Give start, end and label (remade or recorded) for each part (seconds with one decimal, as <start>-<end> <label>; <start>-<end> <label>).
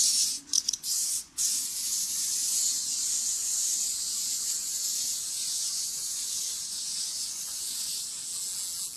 0.0-8.2 remade; 8.2-9.0 recorded